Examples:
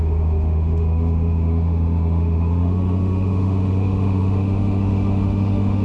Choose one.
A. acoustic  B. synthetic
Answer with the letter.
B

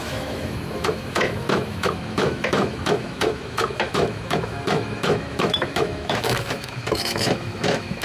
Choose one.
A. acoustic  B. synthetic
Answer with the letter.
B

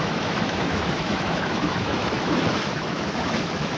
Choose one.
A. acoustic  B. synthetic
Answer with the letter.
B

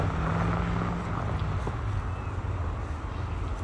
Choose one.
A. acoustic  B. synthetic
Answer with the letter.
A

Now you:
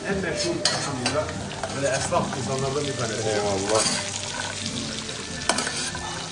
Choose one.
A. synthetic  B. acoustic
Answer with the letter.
B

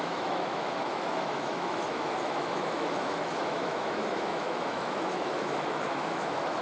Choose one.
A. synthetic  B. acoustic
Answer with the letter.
A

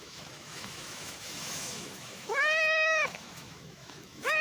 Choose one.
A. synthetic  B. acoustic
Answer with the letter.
A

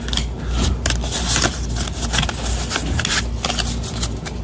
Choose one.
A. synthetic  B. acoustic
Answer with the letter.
B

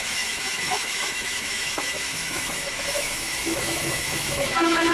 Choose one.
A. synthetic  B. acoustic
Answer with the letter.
A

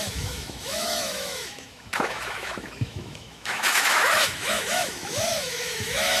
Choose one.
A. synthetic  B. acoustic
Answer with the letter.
A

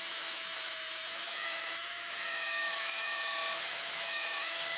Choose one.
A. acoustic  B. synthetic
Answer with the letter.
B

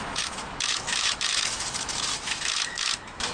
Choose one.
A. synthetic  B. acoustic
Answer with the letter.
A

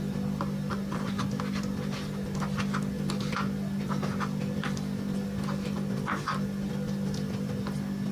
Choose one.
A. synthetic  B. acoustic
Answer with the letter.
B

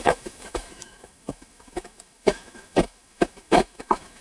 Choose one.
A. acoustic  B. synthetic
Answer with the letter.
B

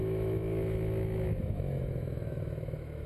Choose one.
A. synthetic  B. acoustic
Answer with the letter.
A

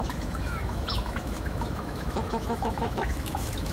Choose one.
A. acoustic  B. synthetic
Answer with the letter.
B